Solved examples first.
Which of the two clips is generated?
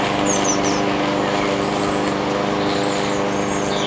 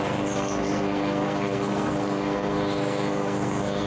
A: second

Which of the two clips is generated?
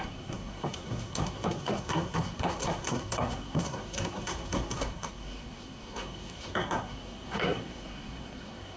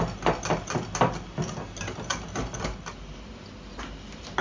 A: first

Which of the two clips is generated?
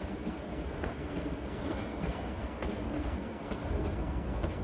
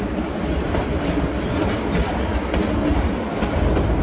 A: first